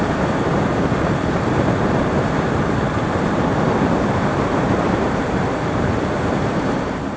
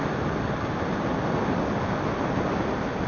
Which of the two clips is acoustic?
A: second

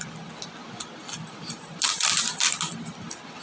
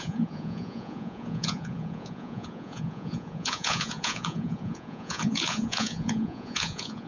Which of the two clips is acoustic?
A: first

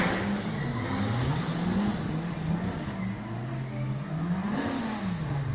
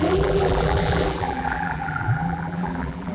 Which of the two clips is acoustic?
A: first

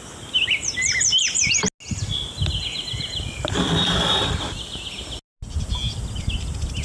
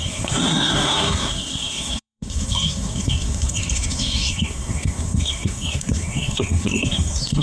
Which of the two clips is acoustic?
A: first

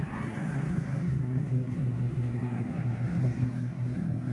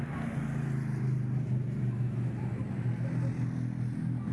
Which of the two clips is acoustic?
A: second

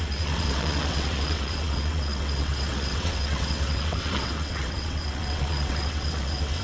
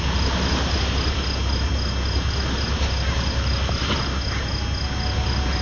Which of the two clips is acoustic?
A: second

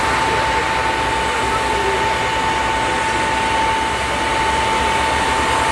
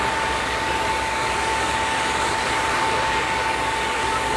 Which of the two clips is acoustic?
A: first